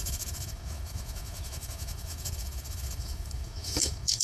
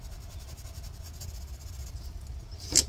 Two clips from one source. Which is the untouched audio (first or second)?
second